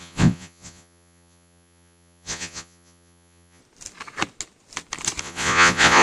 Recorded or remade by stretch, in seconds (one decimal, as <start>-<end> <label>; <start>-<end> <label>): 0.0-3.6 remade; 3.6-5.2 recorded; 5.2-6.0 remade